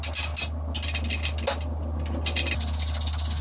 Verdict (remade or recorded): recorded